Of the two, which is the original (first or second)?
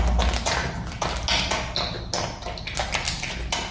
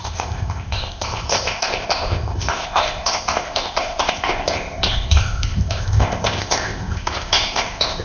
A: first